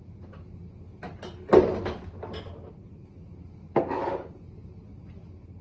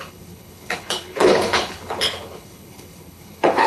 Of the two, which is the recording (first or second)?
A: first